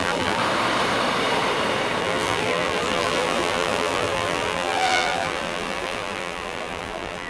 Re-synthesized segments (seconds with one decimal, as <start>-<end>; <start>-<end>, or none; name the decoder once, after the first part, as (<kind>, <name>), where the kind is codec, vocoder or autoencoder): 0.0-0.4 (vocoder, BigVGAN v2); 2.0-7.3